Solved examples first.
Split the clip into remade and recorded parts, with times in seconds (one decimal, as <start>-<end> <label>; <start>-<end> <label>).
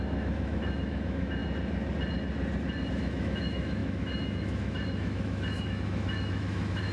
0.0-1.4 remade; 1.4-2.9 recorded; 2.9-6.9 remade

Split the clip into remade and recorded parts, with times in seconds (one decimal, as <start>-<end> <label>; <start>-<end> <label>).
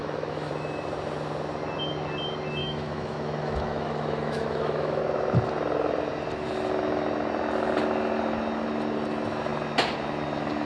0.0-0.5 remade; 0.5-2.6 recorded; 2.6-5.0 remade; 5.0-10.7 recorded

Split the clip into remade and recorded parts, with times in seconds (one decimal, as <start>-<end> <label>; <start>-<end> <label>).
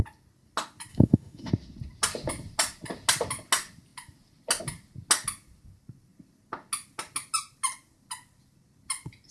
0.0-0.9 recorded; 0.9-1.5 remade; 1.5-9.3 recorded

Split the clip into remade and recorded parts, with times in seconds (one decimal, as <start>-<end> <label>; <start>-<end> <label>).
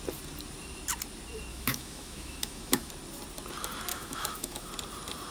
0.0-1.5 recorded; 1.5-2.9 remade; 2.9-3.9 recorded; 3.9-4.7 remade; 4.7-5.3 recorded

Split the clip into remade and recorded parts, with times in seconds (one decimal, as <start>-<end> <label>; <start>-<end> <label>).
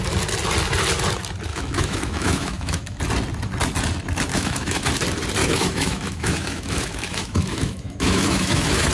0.0-1.5 recorded; 1.5-3.0 remade; 3.0-4.3 recorded; 4.3-4.9 remade; 4.9-5.4 recorded; 5.4-8.9 remade